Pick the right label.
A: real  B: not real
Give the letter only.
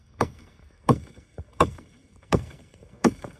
B